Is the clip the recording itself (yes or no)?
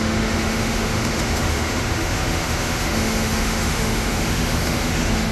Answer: no